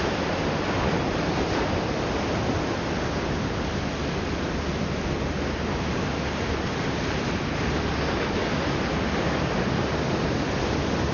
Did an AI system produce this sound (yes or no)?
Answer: no